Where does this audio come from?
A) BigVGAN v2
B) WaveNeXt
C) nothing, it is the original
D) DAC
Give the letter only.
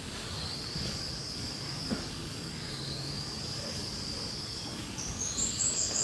D